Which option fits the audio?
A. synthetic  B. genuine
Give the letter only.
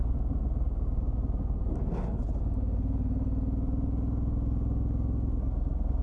B